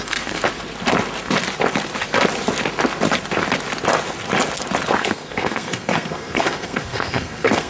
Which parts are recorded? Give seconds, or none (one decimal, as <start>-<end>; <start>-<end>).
0.4-5.0